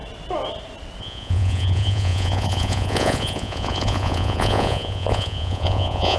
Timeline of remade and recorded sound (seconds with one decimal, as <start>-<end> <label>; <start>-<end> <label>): 0.0-1.0 recorded; 1.0-6.2 remade